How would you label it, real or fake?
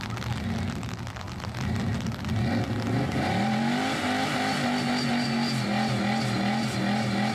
real